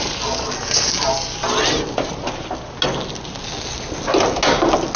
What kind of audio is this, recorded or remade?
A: recorded